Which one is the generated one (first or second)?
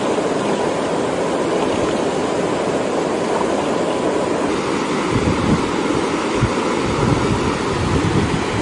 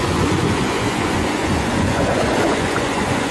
second